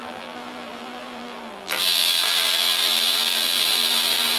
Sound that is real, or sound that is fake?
fake